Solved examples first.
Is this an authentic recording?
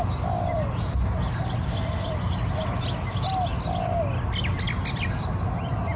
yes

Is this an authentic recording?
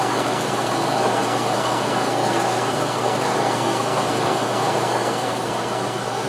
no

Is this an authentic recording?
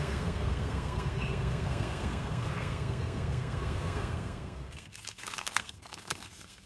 no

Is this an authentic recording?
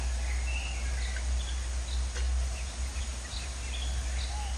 yes